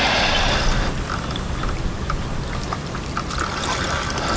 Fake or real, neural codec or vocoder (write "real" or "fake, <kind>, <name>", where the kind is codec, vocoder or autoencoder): real